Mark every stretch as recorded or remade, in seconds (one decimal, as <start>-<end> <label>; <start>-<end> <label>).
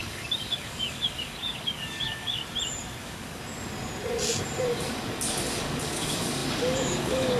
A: 0.0-2.4 remade; 2.4-3.0 recorded; 3.0-3.4 remade; 3.4-4.6 recorded; 4.6-7.4 remade